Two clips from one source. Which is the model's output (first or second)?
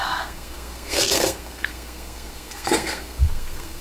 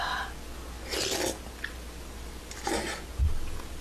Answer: first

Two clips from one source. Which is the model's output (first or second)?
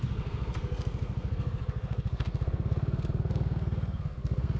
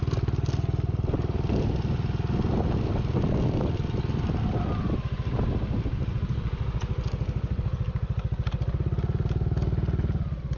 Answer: first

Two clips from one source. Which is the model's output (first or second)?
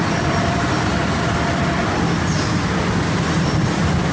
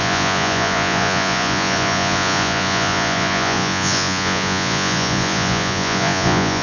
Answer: second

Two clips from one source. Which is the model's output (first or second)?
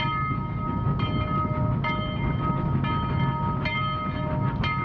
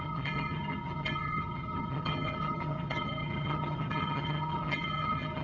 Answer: second